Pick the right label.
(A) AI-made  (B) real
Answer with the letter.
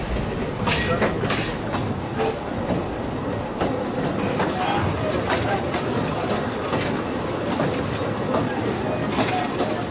B